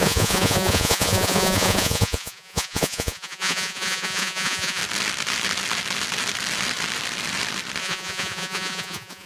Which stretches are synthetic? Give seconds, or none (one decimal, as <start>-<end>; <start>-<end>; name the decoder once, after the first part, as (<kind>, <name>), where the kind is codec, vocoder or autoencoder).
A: 0.0-4.8 (vocoder, Vocos); 7.8-9.3